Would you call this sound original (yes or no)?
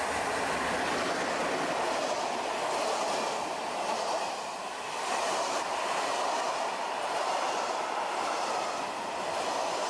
yes